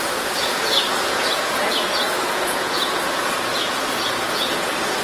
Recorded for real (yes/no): no